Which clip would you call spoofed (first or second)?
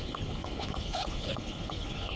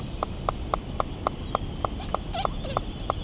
first